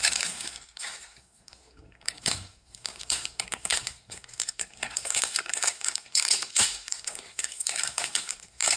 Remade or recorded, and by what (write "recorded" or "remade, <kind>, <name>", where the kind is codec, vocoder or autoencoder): remade, codec, SNAC